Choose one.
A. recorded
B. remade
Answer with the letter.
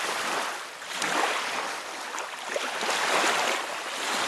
A